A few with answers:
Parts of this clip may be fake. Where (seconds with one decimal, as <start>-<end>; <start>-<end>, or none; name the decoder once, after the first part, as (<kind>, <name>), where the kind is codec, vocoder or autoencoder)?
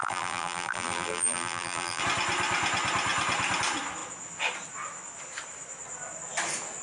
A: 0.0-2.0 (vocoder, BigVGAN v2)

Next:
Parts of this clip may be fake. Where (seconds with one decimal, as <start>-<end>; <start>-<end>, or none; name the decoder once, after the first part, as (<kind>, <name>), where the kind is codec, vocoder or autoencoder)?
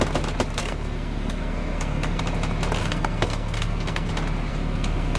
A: 0.6-2.2 (codec, SNAC); 2.8-4.1; 4.5-5.2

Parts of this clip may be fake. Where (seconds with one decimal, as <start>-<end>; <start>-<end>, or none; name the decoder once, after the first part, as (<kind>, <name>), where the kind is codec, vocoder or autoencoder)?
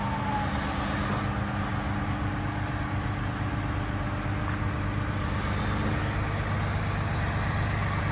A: none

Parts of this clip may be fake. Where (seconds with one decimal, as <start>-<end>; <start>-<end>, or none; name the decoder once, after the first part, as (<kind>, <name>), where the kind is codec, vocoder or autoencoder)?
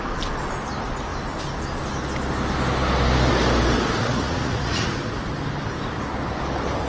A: 4.0-4.9 (vocoder, Vocos)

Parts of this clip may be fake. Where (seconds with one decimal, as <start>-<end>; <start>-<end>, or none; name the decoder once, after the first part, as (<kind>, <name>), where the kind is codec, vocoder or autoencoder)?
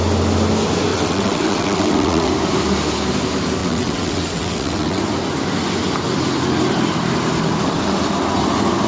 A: 0.9-2.3 (vocoder, WaveNeXt); 3.6-5.0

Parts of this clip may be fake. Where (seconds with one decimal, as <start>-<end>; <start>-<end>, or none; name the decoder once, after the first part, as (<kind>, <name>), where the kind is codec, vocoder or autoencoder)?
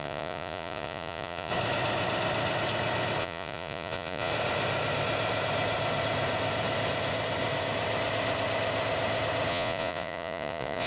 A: 0.0-1.5 (vocoder, Vocos); 3.2-4.3; 9.5-10.9